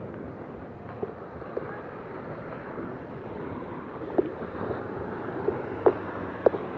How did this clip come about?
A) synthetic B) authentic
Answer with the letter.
B